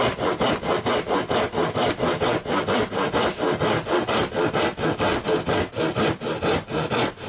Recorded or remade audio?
recorded